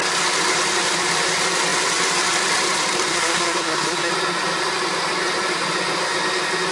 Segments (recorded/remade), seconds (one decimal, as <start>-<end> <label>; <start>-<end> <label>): 0.0-3.1 recorded; 3.1-4.1 remade; 4.1-6.7 recorded